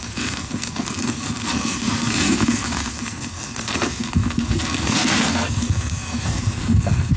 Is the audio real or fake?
fake